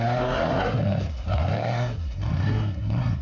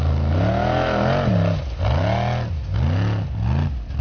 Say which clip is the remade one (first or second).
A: first